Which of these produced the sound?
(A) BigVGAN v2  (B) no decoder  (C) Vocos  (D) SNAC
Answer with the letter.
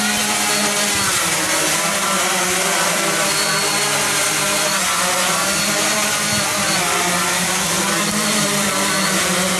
B